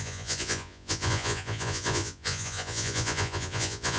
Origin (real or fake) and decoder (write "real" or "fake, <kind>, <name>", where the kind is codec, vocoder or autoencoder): fake, vocoder, Vocos